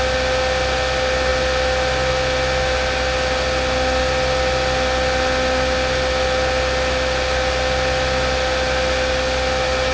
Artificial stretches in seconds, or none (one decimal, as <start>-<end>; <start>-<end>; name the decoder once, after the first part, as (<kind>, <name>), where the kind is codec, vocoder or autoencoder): none